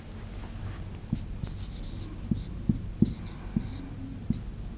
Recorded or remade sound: recorded